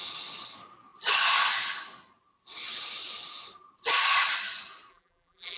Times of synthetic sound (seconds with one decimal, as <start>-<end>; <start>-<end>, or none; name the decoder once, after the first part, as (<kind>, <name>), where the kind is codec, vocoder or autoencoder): 4.9-5.6 (vocoder, BigVGAN v2)